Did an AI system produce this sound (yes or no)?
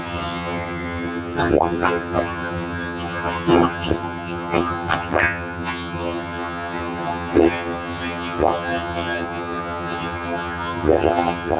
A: yes